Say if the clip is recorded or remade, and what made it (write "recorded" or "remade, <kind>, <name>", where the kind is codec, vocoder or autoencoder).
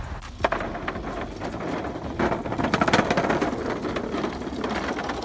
recorded